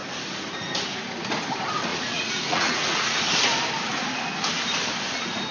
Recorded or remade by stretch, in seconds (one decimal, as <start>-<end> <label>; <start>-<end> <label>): 0.0-1.9 recorded; 1.9-3.2 remade; 3.2-5.5 recorded